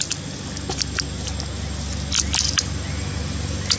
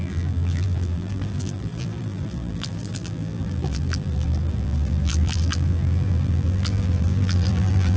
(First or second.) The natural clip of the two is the first